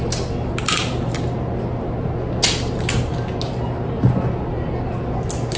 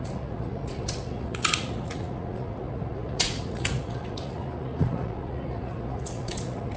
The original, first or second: first